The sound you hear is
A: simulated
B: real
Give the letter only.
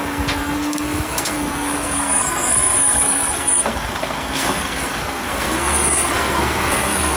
A